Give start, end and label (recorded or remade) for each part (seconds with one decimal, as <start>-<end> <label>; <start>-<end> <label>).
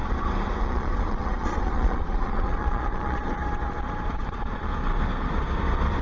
0.0-0.6 recorded; 0.6-3.4 remade; 3.4-4.1 recorded; 4.1-4.7 remade; 4.7-6.0 recorded